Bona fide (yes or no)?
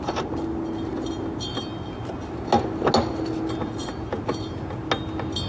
yes